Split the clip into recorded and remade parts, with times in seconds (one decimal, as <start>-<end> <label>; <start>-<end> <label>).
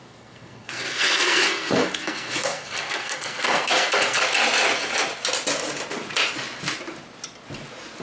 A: 0.0-4.2 remade; 4.2-8.0 recorded